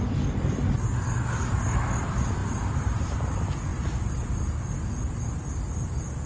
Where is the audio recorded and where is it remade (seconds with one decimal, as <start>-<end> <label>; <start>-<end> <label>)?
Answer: 0.0-6.3 recorded